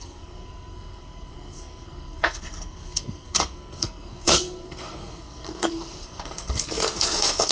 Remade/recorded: remade